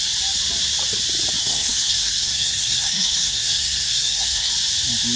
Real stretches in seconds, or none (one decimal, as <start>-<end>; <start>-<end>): 0.0-1.4; 4.5-5.2